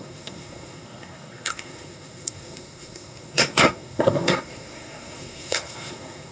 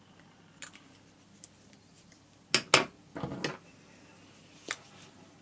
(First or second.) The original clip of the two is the second